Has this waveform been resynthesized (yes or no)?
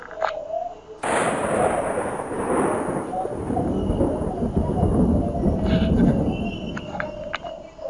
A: no